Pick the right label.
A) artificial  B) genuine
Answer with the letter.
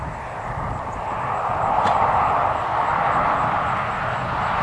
B